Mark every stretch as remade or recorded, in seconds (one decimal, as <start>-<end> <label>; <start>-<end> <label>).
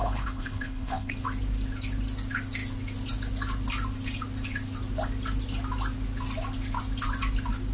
0.0-1.1 remade; 1.1-7.7 recorded